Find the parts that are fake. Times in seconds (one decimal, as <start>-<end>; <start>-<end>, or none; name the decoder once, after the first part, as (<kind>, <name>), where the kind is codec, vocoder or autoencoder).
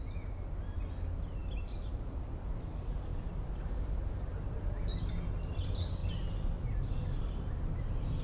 none